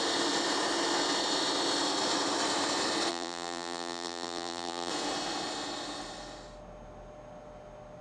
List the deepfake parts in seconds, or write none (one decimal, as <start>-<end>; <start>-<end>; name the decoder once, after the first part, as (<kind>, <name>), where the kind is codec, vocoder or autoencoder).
3.1-4.9 (vocoder, BigVGAN v2)